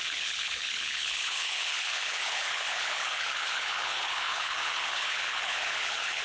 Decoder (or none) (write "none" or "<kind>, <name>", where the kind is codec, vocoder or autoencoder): codec, HILCodec